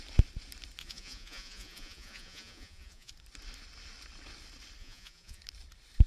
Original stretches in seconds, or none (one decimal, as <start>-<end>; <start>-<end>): 0.0-0.8; 3.1-4.8; 5.4-6.1